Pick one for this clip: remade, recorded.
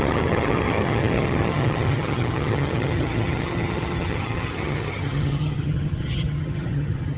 remade